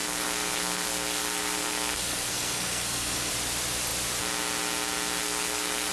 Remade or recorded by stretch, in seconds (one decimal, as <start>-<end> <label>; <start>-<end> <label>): 0.0-3.3 remade; 3.3-5.2 recorded; 5.2-5.9 remade